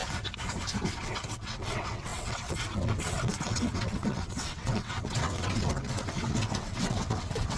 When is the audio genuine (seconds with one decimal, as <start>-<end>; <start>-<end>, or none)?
0.0-1.0